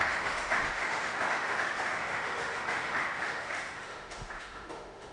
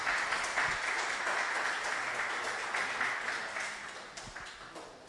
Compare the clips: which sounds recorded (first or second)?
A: second